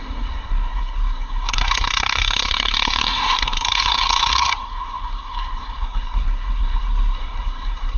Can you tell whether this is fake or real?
fake